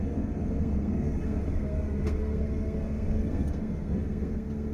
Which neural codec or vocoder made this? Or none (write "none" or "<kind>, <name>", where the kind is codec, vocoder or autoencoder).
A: codec, SNAC